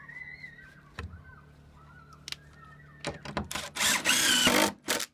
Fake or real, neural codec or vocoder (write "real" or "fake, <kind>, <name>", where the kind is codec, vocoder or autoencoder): real